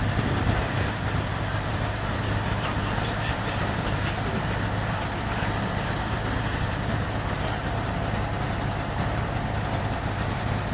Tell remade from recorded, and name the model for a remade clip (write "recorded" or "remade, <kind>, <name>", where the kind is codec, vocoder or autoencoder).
remade, vocoder, BigVGAN v2